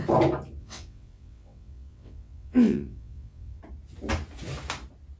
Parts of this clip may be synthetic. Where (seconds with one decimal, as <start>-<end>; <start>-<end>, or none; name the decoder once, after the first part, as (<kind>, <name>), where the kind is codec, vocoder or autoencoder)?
0.6-3.6 (vocoder, WaveNeXt)